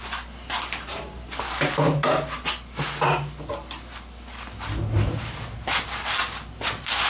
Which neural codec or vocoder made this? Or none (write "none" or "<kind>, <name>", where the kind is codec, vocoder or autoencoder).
none